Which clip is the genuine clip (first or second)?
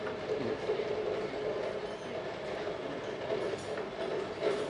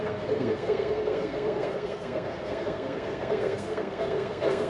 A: first